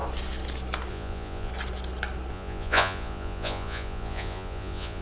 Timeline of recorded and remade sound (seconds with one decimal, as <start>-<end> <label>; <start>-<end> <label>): 0.0-0.9 recorded; 0.9-1.5 remade; 1.5-2.3 recorded; 2.3-5.0 remade